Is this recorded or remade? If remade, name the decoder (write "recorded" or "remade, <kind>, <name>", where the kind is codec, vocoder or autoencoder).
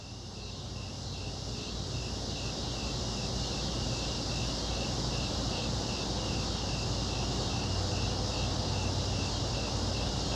recorded